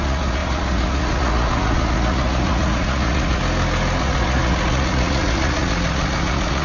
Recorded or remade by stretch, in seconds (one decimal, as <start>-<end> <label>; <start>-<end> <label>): 0.0-3.4 remade; 3.4-4.0 recorded; 4.0-6.6 remade